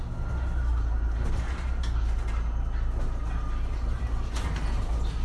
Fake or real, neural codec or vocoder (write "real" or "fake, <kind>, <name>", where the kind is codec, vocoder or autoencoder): real